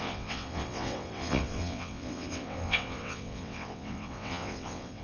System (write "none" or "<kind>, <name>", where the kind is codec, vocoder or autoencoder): vocoder, WaveNeXt